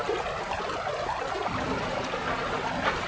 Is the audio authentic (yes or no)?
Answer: yes